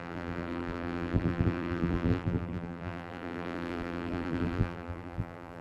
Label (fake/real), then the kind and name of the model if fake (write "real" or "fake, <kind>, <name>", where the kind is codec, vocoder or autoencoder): fake, vocoder, BigVGAN v2